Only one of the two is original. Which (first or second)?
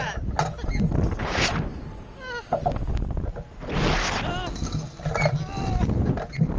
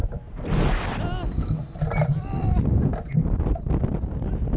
first